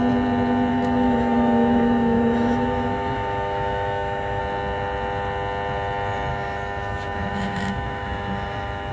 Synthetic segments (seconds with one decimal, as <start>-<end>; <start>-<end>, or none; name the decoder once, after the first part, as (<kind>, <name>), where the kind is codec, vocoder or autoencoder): 0.7-4.4 (autoencoder, DAC-VAE); 6.3-8.9